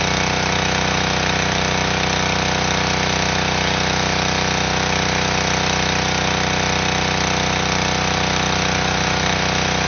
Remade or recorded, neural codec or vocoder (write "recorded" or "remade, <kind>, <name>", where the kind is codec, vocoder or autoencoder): recorded